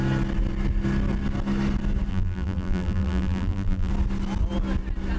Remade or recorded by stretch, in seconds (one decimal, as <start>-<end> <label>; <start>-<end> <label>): 0.0-2.1 recorded; 2.1-3.9 remade; 3.9-5.2 recorded